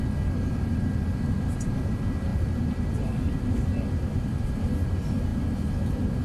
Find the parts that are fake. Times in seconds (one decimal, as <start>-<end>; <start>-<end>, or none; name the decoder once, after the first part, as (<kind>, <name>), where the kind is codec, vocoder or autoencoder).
2.3-3.2 (vocoder, BigVGAN v2)